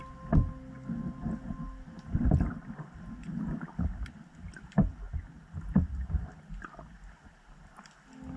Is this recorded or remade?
recorded